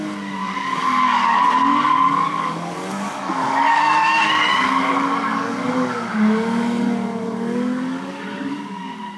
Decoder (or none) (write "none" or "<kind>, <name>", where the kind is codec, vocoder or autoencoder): codec, DAC